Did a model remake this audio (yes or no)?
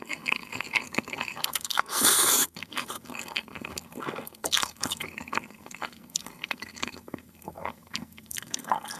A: yes